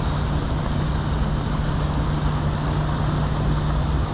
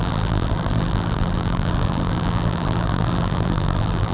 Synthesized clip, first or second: second